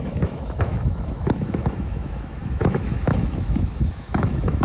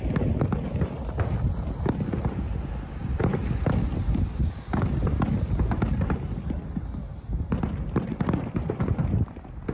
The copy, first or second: first